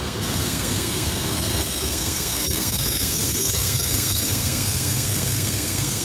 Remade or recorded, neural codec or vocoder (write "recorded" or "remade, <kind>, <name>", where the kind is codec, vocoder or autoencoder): remade, codec, SNAC